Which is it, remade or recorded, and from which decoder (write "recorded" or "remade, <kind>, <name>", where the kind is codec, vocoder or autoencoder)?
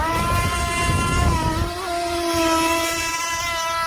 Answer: recorded